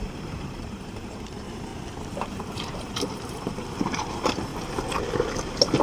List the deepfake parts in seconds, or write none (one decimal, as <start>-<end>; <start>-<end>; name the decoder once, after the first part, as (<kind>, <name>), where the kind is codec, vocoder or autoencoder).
0.0-1.7 (vocoder, BigVGAN v2); 2.7-4.5